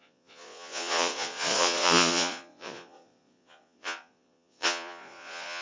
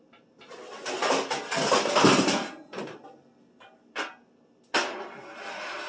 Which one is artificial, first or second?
first